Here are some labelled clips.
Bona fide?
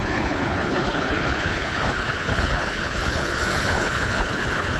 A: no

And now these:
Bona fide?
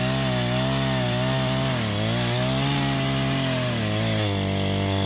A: yes